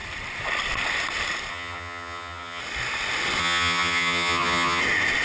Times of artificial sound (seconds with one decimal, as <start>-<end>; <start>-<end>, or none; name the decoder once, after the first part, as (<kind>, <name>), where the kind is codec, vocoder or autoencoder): 1.5-2.6 (vocoder, HiFi-GAN); 3.4-4.8